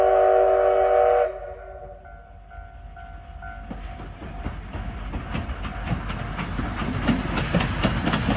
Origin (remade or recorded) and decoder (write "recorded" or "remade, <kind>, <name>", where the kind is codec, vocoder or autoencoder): recorded